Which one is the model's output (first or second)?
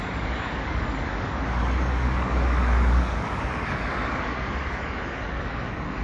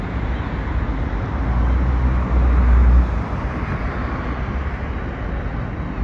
first